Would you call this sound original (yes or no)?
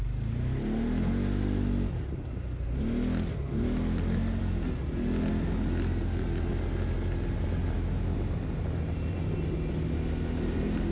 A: yes